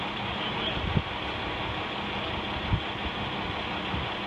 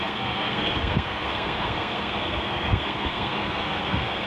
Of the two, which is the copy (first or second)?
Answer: second